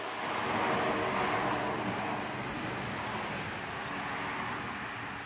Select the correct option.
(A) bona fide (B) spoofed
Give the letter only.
A